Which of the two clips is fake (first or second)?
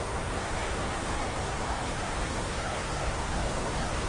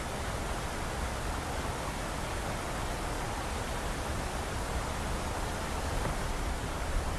first